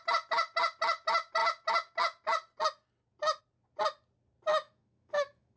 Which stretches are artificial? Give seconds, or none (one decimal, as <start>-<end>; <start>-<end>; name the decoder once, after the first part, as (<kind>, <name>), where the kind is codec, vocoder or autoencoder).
4.5-5.6 (autoencoder, DAC-VAE)